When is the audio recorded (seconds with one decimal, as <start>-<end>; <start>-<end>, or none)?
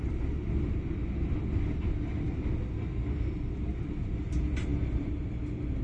0.0-5.8